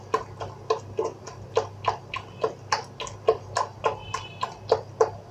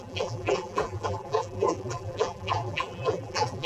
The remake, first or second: second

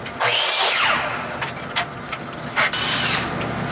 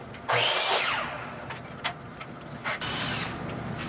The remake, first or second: second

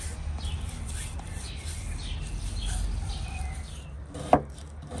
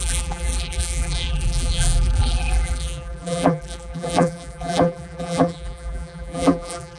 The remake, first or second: second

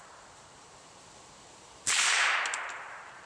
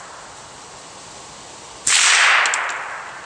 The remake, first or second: first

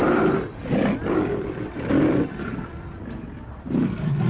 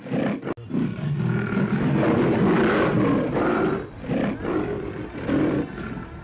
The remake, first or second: first